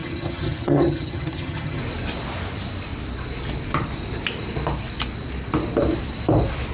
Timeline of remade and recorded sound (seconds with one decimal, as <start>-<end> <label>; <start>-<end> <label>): 0.0-1.8 remade; 1.8-6.7 recorded